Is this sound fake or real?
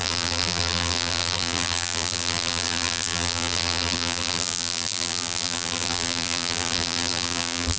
fake